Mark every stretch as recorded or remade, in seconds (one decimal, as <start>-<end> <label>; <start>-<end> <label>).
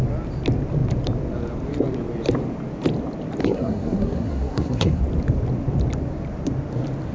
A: 0.0-3.4 recorded; 3.4-5.0 remade; 5.0-7.1 recorded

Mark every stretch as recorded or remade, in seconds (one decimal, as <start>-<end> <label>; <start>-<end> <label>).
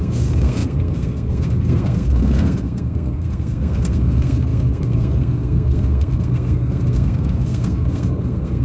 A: 0.0-8.6 remade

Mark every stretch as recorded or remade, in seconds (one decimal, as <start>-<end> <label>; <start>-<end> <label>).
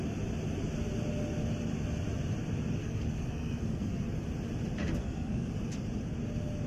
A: 0.0-2.8 recorded; 2.8-4.0 remade; 4.0-5.0 recorded; 5.0-5.5 remade; 5.5-6.7 recorded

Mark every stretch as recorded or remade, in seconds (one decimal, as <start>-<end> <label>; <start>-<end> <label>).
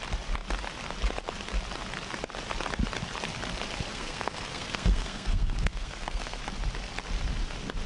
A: 0.0-3.9 recorded; 3.9-6.4 remade; 6.4-7.9 recorded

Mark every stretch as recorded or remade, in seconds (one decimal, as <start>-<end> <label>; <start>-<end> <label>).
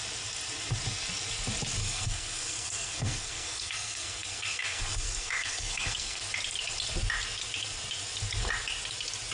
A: 0.0-1.8 recorded; 1.8-6.2 remade; 6.2-9.3 recorded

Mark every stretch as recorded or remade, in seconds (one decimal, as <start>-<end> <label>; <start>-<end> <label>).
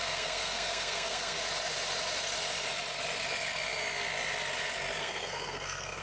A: 0.0-1.4 remade; 1.4-5.0 recorded; 5.0-6.0 remade